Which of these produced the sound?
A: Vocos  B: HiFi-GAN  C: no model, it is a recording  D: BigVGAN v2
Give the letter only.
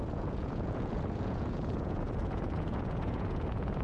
A